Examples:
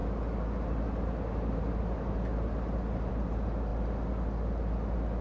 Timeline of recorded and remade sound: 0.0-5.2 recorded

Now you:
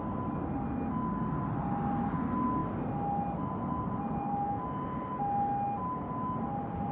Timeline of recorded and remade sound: 0.0-6.9 recorded

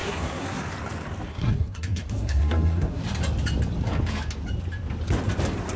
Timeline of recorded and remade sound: 0.0-0.6 remade; 0.6-1.3 recorded; 1.3-3.0 remade; 3.0-5.8 recorded

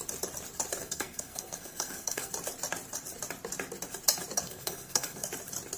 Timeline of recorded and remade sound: 0.0-0.8 recorded; 0.8-2.3 remade; 2.3-4.3 recorded; 4.3-5.3 remade; 5.3-5.8 recorded